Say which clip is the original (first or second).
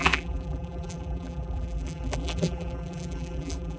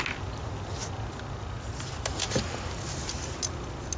second